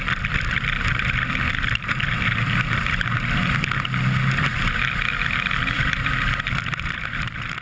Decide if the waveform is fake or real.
real